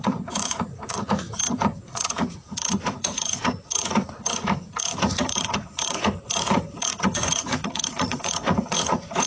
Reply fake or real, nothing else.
fake